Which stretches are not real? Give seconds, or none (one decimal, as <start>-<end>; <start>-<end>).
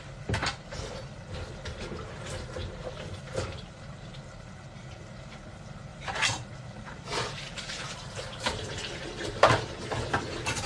2.6-4.6; 5.9-9.5